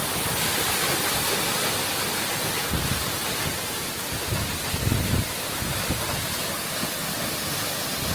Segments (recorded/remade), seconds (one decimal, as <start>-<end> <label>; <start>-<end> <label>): 0.0-8.1 recorded